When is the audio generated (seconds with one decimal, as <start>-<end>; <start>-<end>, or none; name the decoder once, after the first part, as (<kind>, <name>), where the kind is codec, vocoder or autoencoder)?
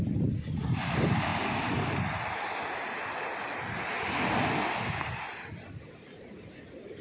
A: 0.0-1.3 (vocoder, BigVGAN v2); 5.5-7.0